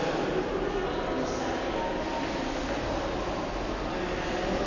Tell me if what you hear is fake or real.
real